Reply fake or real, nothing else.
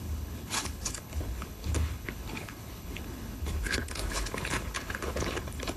fake